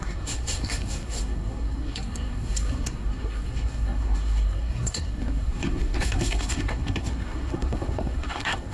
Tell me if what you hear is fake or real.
fake